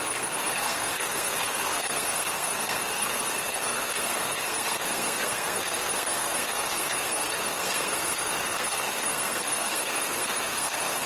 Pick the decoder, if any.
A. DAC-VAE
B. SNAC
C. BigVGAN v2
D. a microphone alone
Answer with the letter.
B